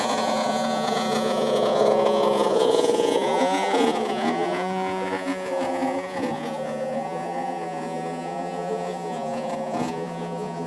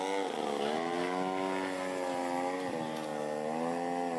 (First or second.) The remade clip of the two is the first